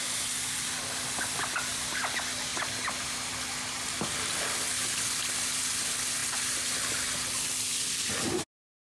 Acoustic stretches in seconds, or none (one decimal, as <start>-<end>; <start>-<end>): 0.0-8.8

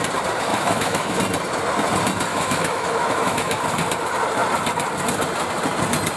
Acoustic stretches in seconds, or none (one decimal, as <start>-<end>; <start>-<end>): 0.0-0.5; 1.2-2.3; 3.6-6.2

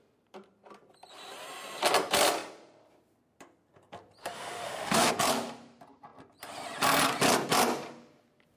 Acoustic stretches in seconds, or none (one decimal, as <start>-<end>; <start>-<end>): 0.0-4.2; 5.1-8.6

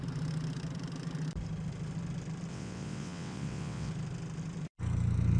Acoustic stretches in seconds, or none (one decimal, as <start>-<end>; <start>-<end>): 0.0-2.5; 3.9-5.4